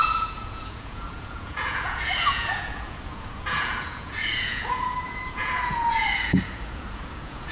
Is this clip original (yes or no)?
no